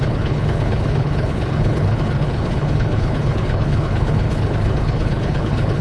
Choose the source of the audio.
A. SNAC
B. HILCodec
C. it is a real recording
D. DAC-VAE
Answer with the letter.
B